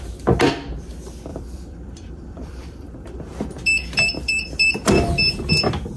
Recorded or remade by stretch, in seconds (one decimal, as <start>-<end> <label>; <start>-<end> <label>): 0.0-1.3 recorded; 1.3-4.9 remade; 4.9-6.0 recorded